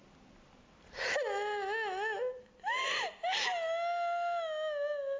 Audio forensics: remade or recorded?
recorded